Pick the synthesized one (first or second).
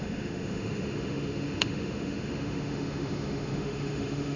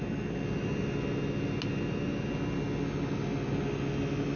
first